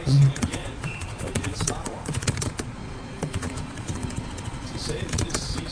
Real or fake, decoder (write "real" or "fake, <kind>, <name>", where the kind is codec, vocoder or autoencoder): fake, vocoder, Vocos